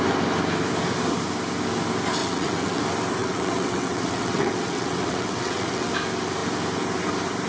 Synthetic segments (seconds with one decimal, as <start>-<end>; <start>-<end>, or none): 2.2-2.8; 3.2-5.9